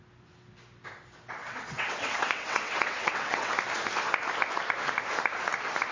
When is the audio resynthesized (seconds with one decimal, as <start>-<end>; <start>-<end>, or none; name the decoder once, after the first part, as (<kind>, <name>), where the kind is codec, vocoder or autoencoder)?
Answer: 1.4-3.5 (vocoder, WaveNeXt)